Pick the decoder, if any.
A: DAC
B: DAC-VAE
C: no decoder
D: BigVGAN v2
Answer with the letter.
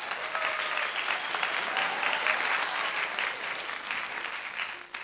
C